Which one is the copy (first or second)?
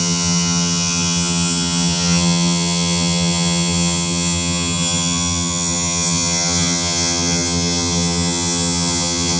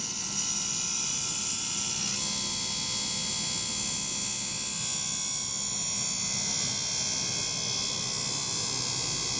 first